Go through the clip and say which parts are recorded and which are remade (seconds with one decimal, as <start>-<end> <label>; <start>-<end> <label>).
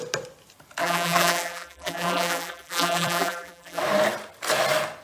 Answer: 0.0-0.8 recorded; 0.8-3.8 remade; 3.8-5.0 recorded